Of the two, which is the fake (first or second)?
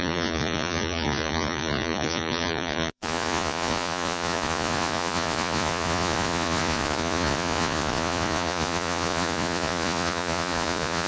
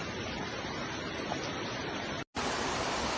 first